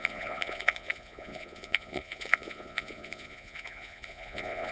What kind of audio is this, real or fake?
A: fake